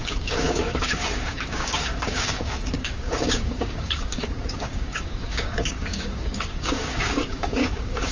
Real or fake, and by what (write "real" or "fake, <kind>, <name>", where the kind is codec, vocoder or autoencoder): fake, codec, DAC